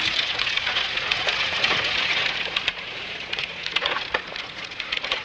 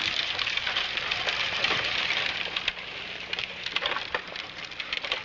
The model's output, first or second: first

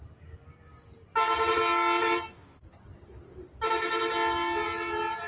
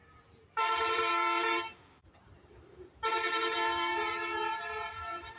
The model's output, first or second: second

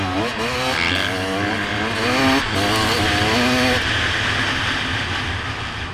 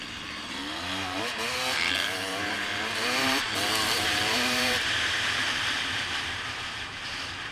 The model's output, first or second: second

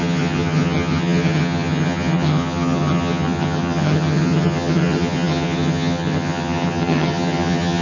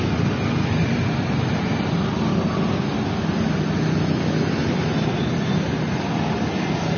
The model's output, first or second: first